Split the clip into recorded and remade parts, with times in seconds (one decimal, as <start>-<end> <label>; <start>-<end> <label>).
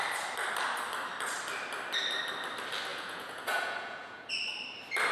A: 0.0-2.9 recorded; 2.9-4.3 remade; 4.3-5.1 recorded